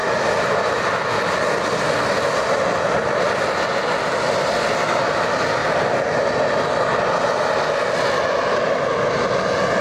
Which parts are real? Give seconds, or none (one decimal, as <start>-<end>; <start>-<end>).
0.0-9.8